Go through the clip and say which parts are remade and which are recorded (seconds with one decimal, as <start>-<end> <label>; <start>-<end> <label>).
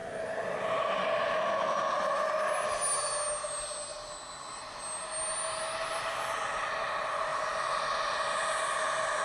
0.0-9.2 recorded